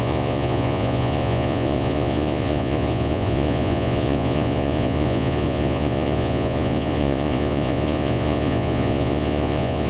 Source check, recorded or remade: remade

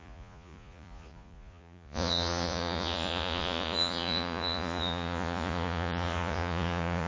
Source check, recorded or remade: remade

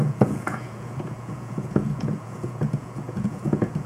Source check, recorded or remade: remade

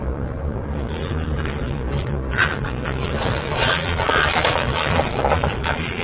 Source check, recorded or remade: remade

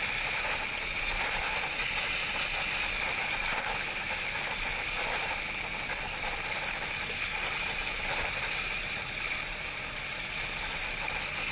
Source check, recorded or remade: recorded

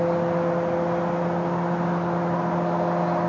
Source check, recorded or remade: recorded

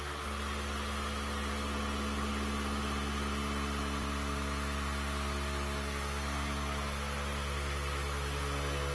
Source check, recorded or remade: recorded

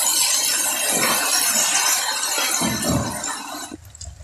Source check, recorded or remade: recorded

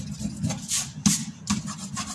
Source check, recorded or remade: recorded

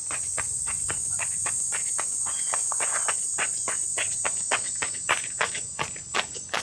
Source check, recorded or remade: remade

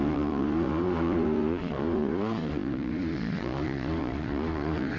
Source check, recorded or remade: remade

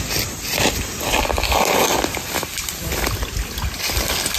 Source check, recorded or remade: recorded